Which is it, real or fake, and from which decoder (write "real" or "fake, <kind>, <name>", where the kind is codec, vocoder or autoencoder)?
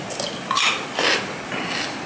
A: real